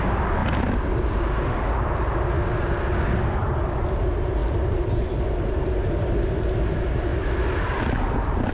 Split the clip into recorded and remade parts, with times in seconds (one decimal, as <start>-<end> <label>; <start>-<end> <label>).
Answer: 0.0-0.4 remade; 0.4-3.8 recorded; 3.8-7.1 remade; 7.1-7.8 recorded; 7.8-8.5 remade

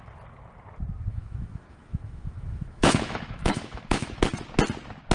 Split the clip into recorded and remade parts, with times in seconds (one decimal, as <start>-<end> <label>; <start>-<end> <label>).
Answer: 0.0-1.1 recorded; 1.1-4.2 remade; 4.2-5.1 recorded

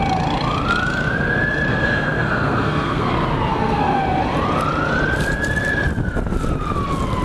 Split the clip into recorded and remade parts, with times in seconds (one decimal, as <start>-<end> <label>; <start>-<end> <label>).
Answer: 0.0-1.7 recorded; 1.7-3.1 remade; 3.1-3.5 recorded; 3.5-4.0 remade; 4.0-7.2 recorded

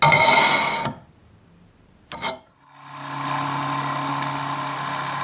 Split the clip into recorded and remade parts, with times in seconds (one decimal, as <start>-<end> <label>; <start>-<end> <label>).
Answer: 0.0-5.2 recorded

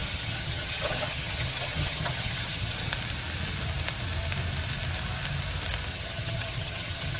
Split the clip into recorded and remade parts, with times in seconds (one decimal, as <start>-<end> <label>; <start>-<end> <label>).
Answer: 0.0-2.9 remade; 2.9-5.9 recorded; 5.9-7.2 remade

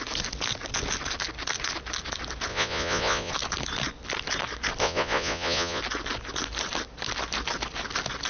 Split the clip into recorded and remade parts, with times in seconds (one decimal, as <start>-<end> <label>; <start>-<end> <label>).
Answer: 0.0-2.5 recorded; 2.5-3.3 remade; 3.3-4.8 recorded; 4.8-5.8 remade; 5.8-8.3 recorded

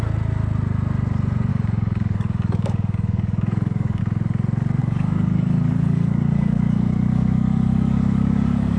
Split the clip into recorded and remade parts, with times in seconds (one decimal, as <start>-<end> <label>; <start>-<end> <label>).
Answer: 0.0-1.5 recorded; 1.5-4.0 remade; 4.0-4.8 recorded; 4.8-8.8 remade

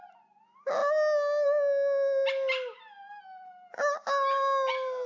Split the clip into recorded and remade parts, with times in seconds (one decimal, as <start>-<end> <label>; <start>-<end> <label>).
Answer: 0.0-5.1 recorded